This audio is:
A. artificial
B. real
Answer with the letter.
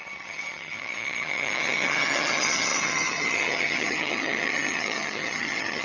A